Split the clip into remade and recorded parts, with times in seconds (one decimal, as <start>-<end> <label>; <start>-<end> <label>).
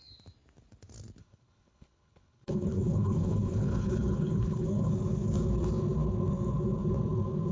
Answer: 0.0-1.2 recorded; 1.2-4.9 remade; 4.9-7.5 recorded